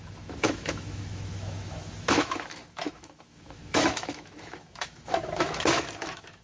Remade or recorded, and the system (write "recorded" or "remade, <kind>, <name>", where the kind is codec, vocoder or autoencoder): remade, autoencoder, DAC-VAE